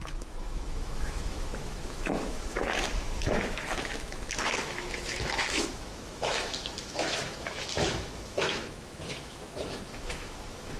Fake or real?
fake